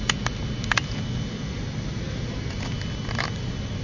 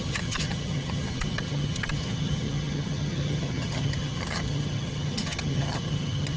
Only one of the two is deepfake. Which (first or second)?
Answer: second